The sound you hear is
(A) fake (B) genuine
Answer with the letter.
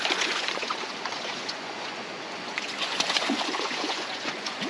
A